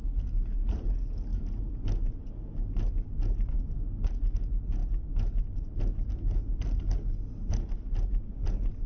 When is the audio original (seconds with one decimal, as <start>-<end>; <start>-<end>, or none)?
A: 0.0-8.9